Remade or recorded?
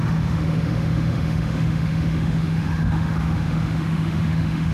remade